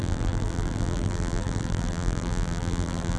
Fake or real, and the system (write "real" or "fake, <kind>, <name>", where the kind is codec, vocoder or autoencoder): fake, vocoder, BigVGAN v2